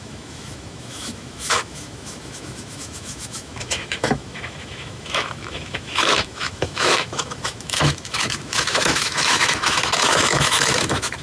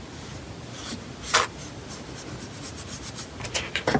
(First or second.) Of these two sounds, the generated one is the first